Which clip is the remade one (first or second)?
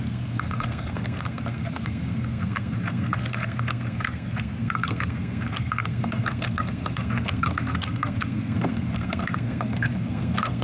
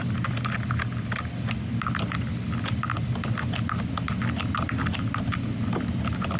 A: first